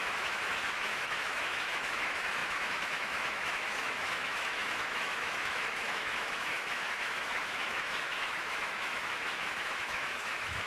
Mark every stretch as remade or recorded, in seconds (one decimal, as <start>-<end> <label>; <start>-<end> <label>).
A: 0.0-10.7 remade